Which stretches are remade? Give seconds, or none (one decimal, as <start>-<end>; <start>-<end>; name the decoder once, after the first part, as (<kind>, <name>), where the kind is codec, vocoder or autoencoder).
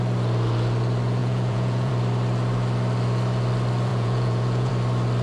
1.2-1.9 (vocoder, Vocos); 3.9-4.7